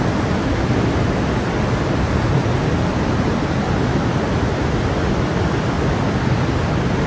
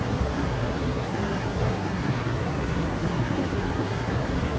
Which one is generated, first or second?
second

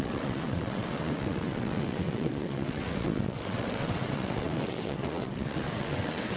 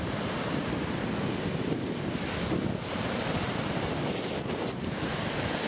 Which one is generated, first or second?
first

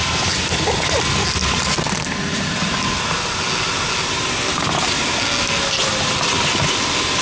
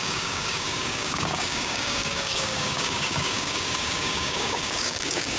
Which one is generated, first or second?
second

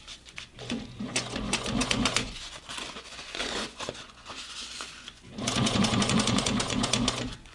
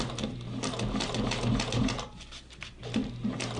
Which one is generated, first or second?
first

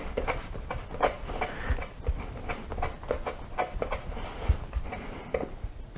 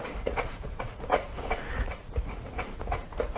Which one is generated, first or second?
second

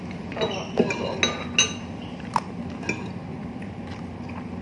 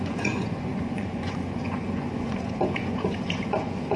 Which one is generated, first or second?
second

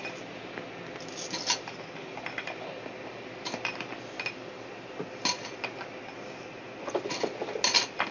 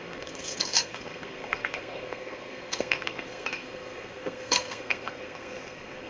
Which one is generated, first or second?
second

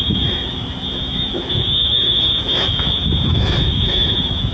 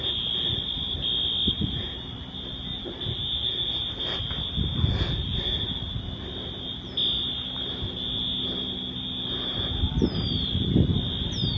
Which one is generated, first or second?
first